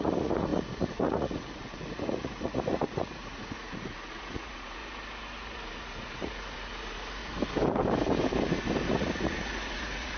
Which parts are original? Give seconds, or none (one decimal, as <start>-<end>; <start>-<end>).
4.8-5.5; 7.2-8.9